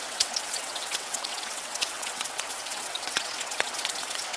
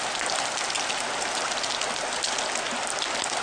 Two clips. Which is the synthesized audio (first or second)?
first